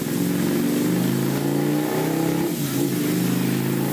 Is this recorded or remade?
recorded